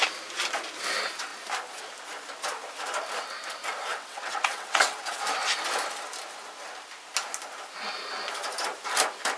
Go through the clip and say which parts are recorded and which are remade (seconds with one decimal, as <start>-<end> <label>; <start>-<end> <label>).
0.0-3.9 recorded; 3.9-5.2 remade; 5.2-9.4 recorded